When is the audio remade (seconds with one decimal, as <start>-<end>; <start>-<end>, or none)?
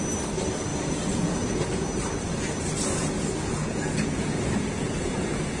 0.7-1.5; 3.0-5.6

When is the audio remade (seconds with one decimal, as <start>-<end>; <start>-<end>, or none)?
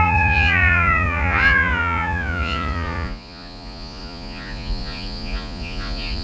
0.0-6.2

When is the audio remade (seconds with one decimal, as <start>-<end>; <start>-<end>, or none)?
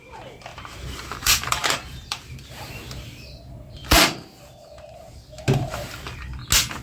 0.5-2.7; 3.8-4.4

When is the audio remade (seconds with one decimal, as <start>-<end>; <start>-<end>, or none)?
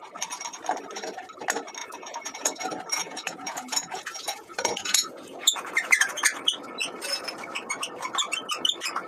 1.8-2.6; 3.0-6.2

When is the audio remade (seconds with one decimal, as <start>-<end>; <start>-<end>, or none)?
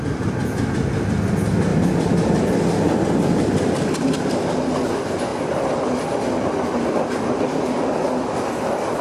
1.7-4.3